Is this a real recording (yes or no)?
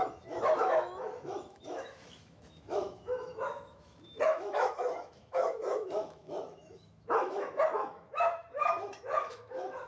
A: no